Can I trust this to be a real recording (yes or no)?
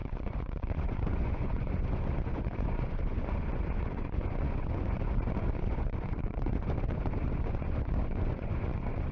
no